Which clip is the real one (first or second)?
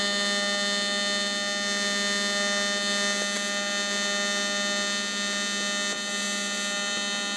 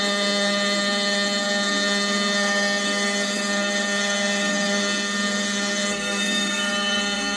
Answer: first